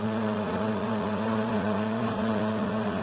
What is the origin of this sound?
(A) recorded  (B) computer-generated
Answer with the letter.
B